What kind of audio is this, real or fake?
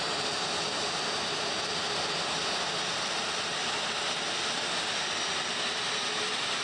real